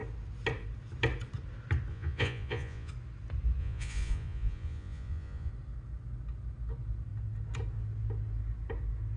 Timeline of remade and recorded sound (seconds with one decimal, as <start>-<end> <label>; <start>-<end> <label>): 0.0-1.9 recorded; 1.9-2.9 remade; 2.9-3.6 recorded; 3.6-5.5 remade; 5.5-9.2 recorded